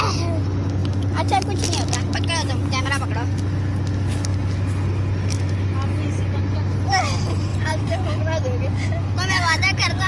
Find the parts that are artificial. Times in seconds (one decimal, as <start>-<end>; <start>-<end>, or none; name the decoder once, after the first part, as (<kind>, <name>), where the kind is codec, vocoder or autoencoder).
7.5-8.2 (vocoder, BigVGAN v2)